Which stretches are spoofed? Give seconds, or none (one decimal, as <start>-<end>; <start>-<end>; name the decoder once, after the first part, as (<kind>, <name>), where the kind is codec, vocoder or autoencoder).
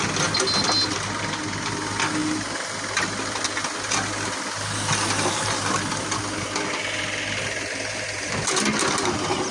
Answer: none